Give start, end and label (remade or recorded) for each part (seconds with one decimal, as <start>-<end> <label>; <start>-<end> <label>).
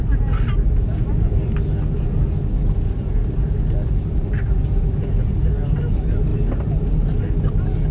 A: 0.0-7.9 recorded